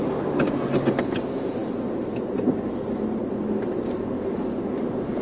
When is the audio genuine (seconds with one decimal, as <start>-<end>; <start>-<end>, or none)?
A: 0.0-5.2